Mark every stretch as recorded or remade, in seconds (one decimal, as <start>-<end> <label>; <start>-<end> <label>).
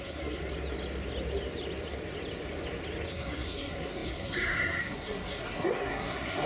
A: 0.0-0.4 remade; 0.4-3.1 recorded; 3.1-6.5 remade